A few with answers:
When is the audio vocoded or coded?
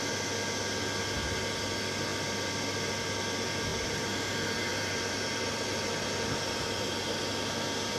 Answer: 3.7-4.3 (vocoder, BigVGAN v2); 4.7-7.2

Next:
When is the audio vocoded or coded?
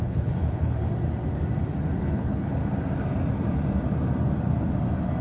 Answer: 0.0-0.8 (codec, HILCodec); 2.0-2.6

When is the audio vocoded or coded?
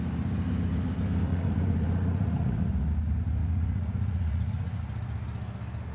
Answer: 1.3-2.9 (vocoder, Vocos); 3.4-4.8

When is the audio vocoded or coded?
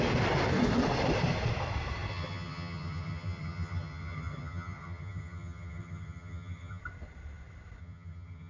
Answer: 2.1-6.8 (vocoder, HiFi-GAN); 7.8-8.5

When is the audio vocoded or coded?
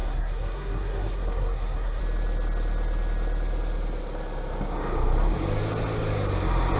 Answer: 0.0-2.0 (codec, SNAC)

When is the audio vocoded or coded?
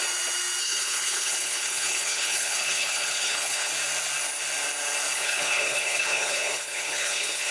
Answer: 0.6-3.7 (codec, HILCodec); 5.1-7.5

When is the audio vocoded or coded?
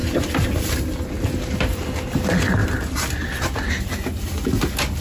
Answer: none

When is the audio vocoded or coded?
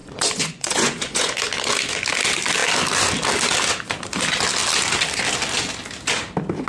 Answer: 0.0-1.3 (vocoder, Vocos)